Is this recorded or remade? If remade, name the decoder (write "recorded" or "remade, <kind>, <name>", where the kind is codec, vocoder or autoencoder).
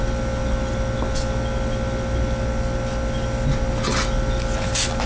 recorded